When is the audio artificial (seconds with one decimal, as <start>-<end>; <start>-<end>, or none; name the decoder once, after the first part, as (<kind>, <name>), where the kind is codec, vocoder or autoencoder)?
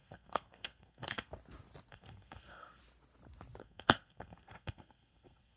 0.0-1.3 (codec, SNAC); 1.9-2.8; 3.6-5.6